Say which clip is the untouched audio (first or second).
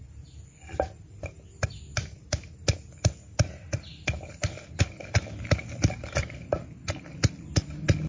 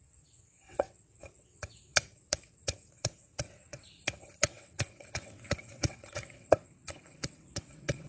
first